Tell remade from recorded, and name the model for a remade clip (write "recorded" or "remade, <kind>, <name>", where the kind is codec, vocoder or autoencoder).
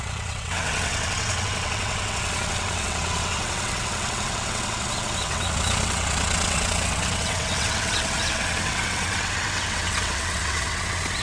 remade, vocoder, WaveNeXt